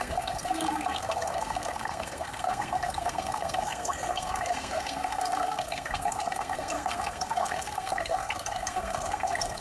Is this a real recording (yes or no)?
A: no